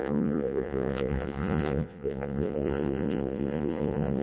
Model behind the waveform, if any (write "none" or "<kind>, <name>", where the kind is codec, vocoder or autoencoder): vocoder, Vocos